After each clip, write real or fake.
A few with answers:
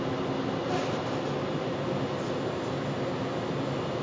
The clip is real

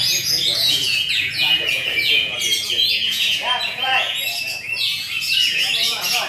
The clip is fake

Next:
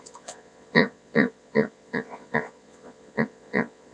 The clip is fake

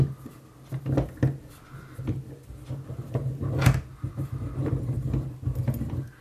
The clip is real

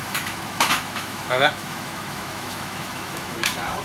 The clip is fake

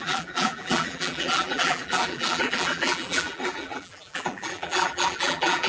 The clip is fake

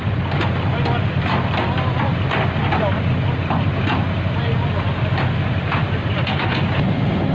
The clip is real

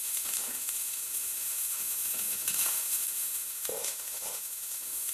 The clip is fake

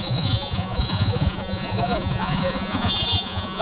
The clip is fake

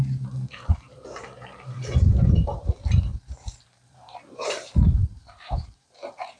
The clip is fake